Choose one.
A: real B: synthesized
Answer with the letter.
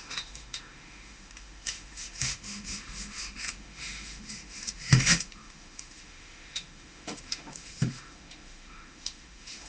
B